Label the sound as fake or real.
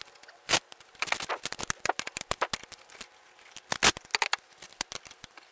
real